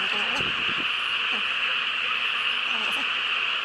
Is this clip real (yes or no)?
yes